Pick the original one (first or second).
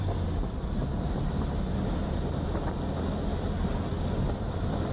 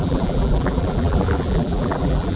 first